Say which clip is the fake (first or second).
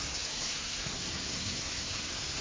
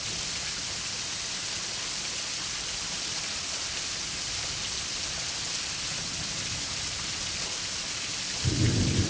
first